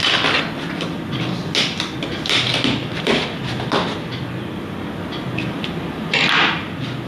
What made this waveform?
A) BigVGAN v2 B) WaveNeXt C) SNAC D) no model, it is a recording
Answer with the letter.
D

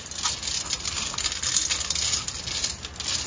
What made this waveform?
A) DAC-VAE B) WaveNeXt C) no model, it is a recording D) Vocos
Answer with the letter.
C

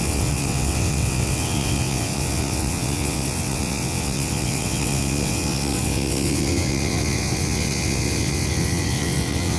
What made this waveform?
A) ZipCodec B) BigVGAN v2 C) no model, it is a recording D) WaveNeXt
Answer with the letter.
D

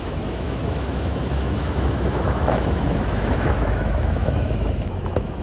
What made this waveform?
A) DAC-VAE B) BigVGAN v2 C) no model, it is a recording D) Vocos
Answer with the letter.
A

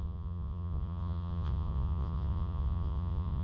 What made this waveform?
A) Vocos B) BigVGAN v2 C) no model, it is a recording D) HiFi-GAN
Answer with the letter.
A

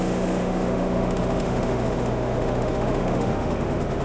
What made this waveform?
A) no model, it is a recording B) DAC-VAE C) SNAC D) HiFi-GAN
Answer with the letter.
B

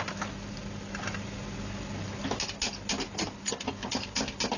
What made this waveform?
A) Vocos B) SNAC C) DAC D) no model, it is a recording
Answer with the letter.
D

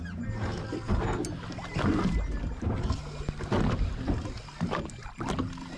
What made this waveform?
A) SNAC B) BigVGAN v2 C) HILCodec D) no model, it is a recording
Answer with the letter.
D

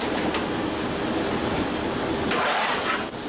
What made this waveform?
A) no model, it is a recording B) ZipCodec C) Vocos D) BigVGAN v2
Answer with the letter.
A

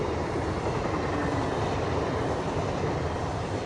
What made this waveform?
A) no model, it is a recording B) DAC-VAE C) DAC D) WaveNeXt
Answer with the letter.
A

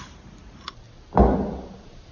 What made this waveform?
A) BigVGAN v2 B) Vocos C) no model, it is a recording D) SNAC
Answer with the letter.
C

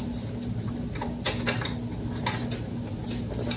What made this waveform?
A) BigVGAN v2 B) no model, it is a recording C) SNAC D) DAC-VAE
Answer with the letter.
B